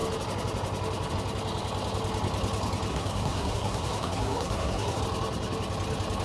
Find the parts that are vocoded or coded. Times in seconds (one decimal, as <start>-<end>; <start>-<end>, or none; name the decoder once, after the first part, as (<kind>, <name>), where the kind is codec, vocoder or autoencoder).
2.9-5.0 (codec, SNAC)